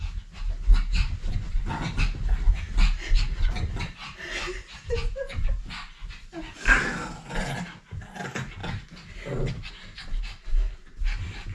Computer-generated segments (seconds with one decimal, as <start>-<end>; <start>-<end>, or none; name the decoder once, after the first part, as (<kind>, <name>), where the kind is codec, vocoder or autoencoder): none